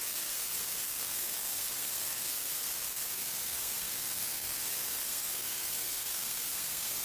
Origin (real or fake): fake